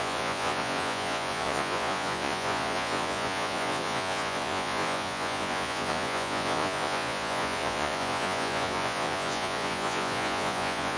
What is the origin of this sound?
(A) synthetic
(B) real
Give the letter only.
A